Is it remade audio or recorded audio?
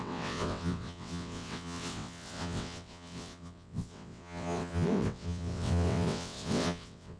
remade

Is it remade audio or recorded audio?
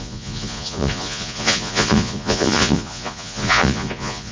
remade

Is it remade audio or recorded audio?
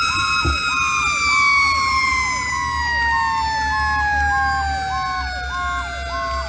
recorded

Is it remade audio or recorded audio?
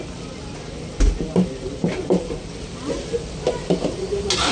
recorded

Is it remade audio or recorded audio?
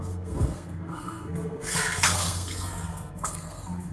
remade